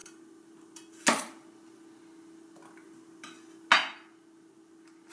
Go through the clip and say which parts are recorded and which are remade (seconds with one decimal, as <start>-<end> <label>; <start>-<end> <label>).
0.0-5.1 recorded